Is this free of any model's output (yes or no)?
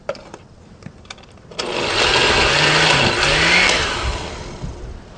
yes